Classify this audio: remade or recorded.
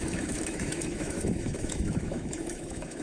remade